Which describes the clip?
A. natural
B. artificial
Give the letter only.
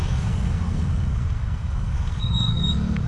B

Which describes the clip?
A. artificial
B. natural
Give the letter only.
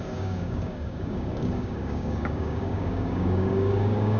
A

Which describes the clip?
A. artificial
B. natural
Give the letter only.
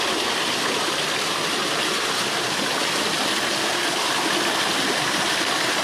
B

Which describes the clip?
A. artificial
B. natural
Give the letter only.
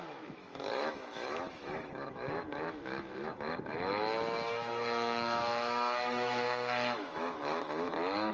A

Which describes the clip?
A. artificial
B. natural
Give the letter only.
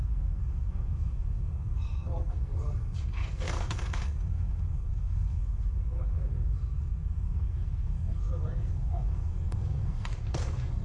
A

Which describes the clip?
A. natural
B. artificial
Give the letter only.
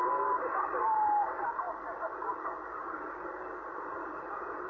A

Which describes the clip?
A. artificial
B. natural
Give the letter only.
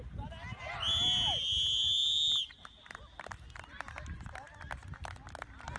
B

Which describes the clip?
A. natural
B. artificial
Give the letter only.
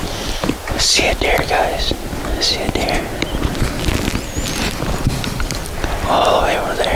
A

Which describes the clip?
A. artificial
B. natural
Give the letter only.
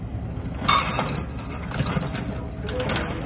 B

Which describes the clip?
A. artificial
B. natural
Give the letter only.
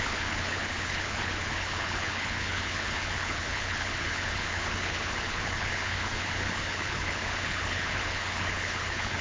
A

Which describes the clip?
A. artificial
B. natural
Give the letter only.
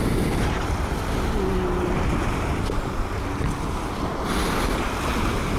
B